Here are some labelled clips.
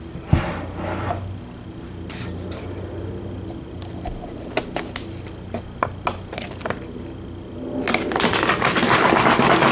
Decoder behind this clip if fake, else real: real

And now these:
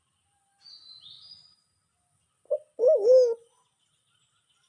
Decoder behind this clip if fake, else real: real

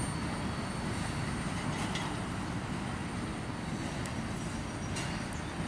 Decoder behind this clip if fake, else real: real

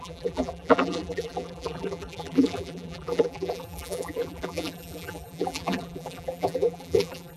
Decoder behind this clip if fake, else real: fake, vocoder, BigVGAN v2